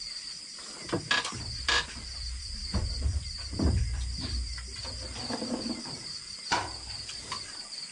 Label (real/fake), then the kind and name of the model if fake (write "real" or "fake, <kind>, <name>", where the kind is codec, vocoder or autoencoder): fake, vocoder, BigVGAN v2